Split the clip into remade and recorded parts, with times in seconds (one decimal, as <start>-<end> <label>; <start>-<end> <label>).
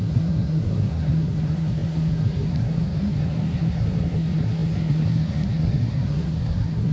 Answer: 0.0-6.9 remade